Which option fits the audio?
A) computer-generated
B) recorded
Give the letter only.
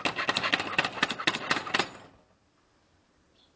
B